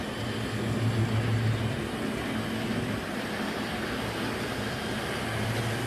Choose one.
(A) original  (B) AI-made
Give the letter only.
A